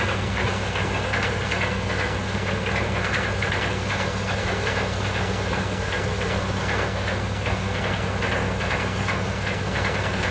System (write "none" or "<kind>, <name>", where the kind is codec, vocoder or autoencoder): codec, SNAC